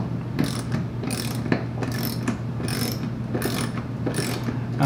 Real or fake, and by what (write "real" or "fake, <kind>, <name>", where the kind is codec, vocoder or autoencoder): real